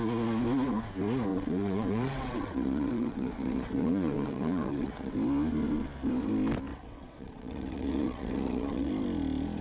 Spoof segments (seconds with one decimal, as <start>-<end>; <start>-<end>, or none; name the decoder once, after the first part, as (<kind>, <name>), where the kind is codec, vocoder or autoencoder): 1.3-5.1 (vocoder, WaveNeXt); 6.7-8.9

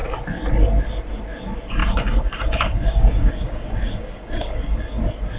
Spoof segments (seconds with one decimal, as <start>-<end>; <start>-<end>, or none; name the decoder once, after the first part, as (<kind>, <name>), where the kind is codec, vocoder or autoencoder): 1.8-5.0 (codec, DAC)

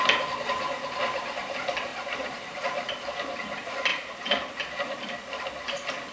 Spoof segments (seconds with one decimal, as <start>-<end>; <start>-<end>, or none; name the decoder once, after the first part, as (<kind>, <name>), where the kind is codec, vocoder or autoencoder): 1.9-2.6 (vocoder, BigVGAN v2); 3.9-4.5

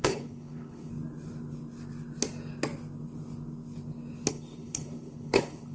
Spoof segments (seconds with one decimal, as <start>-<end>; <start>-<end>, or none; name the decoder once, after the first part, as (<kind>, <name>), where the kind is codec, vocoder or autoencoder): 0.0-0.9 (codec, HILCodec); 4.3-5.7

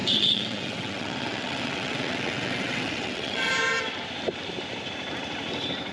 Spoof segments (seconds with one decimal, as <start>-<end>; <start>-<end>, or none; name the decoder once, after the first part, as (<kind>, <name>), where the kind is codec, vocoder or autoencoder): 0.0-3.5 (vocoder, WaveNeXt)

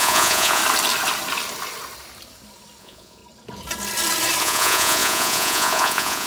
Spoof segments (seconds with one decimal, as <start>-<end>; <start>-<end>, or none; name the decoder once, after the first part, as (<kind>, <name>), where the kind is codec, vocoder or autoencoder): 0.0-0.6 (vocoder, Vocos); 2.8-3.2; 4.4-6.3